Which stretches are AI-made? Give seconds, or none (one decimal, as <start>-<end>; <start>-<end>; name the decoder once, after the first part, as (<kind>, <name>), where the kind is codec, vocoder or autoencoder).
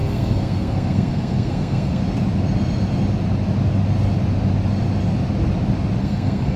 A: 0.0-2.0 (codec, SNAC); 6.0-6.6